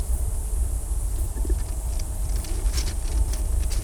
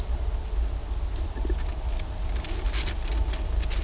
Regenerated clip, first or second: first